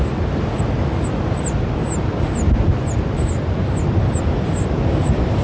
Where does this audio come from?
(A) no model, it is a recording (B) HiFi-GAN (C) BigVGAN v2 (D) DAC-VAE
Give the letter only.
A